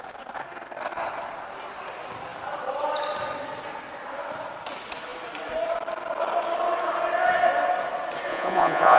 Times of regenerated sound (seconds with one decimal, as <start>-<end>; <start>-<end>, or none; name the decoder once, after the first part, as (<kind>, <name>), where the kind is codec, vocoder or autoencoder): 8.3-9.0 (vocoder, Vocos)